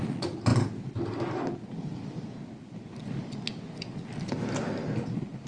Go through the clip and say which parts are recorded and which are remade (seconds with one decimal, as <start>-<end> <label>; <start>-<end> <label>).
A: 0.0-5.5 recorded